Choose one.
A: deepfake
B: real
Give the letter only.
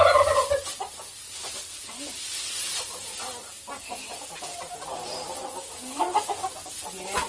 B